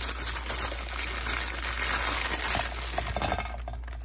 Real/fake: real